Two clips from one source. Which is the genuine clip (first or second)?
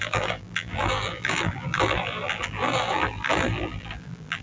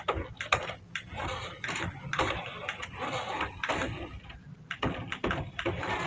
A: second